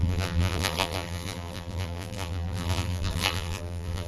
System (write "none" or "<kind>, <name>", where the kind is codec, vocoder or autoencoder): vocoder, BigVGAN v2